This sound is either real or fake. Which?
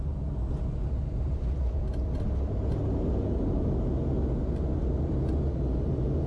real